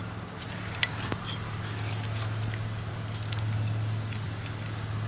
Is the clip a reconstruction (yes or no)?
no